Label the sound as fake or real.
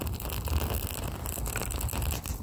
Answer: real